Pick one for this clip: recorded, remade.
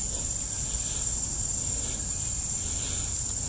recorded